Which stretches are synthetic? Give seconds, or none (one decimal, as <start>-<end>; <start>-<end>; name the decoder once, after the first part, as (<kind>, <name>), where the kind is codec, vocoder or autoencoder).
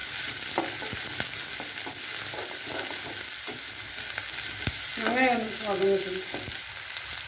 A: none